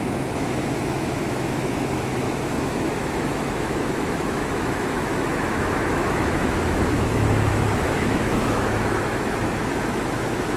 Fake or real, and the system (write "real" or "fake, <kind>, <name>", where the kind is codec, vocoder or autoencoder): fake, autoencoder, DAC-VAE